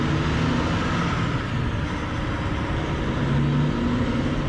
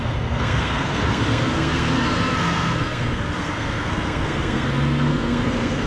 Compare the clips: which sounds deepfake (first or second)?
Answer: second